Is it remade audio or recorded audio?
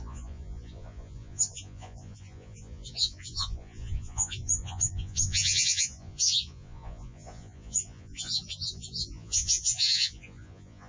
remade